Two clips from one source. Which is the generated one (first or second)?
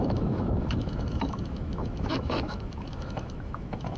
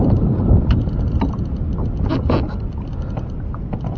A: first